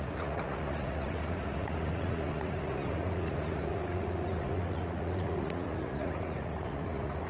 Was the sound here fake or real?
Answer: fake